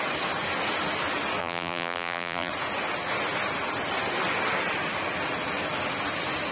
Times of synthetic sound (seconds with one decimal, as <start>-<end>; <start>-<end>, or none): 1.4-2.5